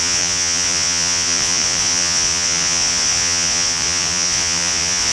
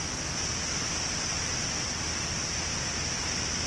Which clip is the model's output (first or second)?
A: first